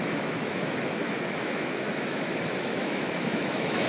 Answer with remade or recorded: remade